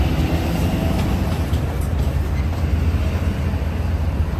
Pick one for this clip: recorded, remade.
recorded